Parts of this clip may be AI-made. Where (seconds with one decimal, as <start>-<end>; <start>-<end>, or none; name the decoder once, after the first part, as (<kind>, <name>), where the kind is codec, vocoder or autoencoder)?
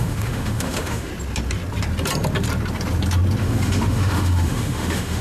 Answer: 0.0-1.1 (autoencoder, DAC-VAE); 3.4-5.2